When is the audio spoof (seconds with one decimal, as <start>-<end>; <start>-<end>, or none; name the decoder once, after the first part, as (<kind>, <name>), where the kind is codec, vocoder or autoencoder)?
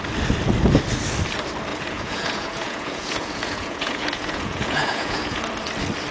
1.7-5.4 (vocoder, Vocos)